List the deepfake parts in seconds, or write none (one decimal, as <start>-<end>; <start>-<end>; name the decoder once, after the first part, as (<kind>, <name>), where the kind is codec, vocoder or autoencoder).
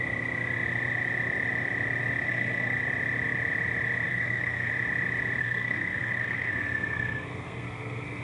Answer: 2.2-2.8 (codec, SNAC); 4.1-4.7; 5.4-8.2